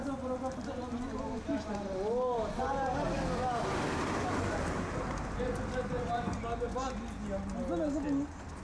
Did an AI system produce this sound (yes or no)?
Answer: no